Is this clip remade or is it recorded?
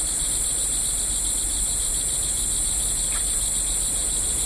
recorded